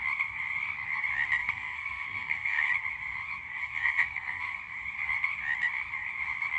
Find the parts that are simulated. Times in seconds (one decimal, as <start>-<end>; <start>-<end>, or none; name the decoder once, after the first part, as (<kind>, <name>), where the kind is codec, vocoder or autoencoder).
1.4-2.7 (codec, SNAC); 3.6-4.6